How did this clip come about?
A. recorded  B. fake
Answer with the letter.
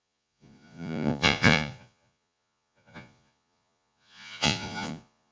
B